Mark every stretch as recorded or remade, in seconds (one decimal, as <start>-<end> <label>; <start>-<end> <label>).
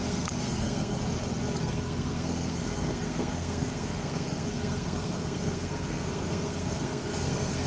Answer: 0.0-1.0 remade; 1.0-1.6 recorded; 1.6-7.7 remade